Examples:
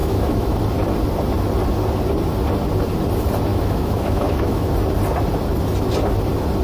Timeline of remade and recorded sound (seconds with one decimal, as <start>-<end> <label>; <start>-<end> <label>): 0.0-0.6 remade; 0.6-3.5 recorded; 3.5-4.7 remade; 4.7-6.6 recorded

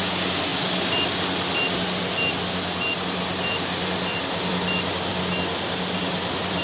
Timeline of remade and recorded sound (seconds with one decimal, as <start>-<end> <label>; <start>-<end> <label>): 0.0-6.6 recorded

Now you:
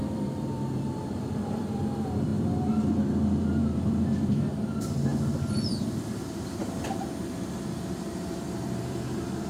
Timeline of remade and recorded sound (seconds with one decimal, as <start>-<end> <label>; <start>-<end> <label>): 0.0-2.3 remade; 2.3-3.6 recorded; 3.6-5.1 remade; 5.1-6.0 recorded; 6.0-6.6 remade; 6.6-7.9 recorded; 7.9-9.5 remade